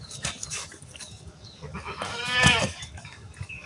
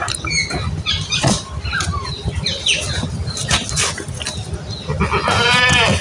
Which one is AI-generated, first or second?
first